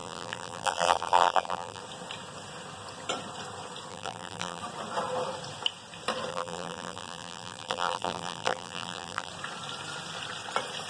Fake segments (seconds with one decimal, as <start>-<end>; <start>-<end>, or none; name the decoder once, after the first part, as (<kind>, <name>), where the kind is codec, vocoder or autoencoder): 0.0-1.8 (vocoder, BigVGAN v2); 3.9-4.6; 6.3-9.3